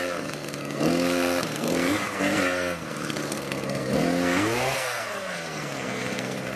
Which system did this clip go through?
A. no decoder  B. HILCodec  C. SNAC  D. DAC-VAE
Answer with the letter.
C